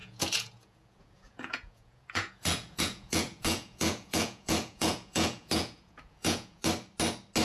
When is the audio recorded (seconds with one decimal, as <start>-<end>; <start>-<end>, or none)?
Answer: 6.6-7.4